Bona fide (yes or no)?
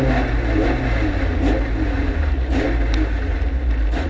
yes